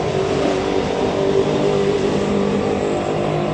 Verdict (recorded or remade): recorded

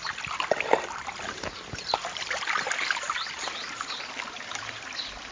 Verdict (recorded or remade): recorded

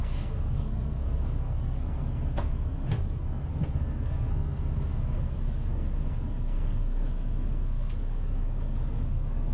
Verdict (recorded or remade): remade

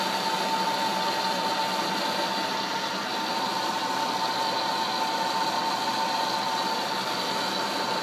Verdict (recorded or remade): recorded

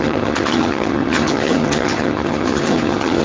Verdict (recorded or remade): remade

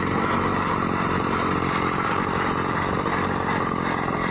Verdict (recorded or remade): remade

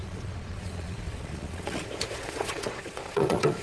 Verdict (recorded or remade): remade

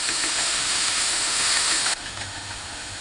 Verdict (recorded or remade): remade